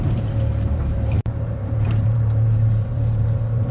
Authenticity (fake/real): fake